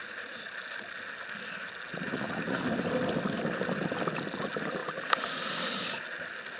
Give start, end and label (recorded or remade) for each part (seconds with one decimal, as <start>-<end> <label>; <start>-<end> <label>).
0.0-0.5 remade; 0.5-1.9 recorded; 1.9-2.6 remade; 2.6-6.6 recorded